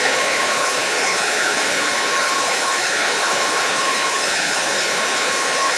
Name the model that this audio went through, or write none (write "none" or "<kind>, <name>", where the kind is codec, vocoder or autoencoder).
codec, HILCodec